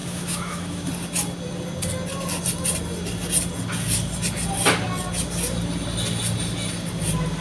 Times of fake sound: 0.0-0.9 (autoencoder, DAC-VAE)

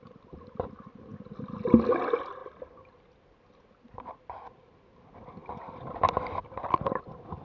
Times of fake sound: none

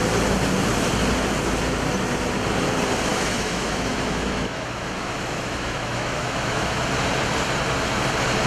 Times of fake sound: 3.1-6.8 (autoencoder, DAC-VAE)